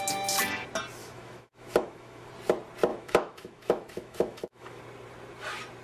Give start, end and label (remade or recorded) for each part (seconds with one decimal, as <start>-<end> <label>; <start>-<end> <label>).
0.0-1.0 recorded; 1.0-2.3 remade; 2.3-2.9 recorded; 2.9-4.8 remade; 4.8-5.8 recorded